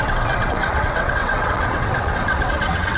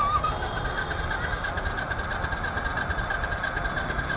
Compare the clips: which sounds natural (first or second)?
second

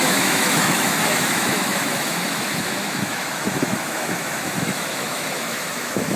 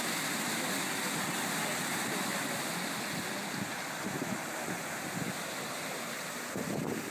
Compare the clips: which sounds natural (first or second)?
second